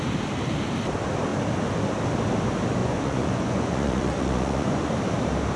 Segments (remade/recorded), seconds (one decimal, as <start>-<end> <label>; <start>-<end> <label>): 0.0-2.8 recorded; 2.8-4.9 remade; 4.9-5.6 recorded